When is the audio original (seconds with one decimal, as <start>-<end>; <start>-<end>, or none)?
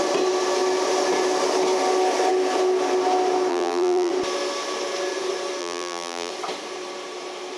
0.0-3.5; 4.1-5.6; 6.3-7.6